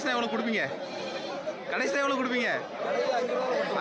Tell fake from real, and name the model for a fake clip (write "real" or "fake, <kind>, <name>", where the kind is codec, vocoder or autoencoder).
real